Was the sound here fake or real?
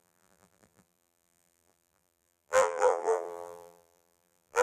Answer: fake